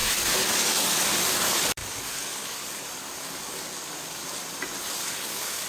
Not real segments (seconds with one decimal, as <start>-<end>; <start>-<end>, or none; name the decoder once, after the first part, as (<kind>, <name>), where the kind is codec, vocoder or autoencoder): 0.0-4.2 (codec, DAC); 4.9-5.7